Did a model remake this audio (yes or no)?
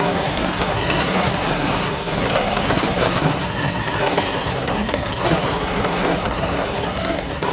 yes